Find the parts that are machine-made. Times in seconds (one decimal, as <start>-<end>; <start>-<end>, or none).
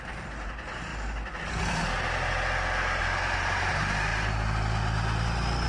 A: 0.0-0.9; 3.0-4.1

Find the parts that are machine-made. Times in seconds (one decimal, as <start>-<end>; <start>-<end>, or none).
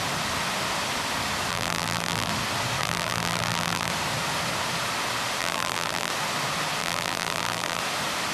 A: 1.5-2.3; 2.8-3.9; 5.4-6.1; 6.8-7.8